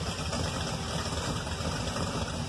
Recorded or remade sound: recorded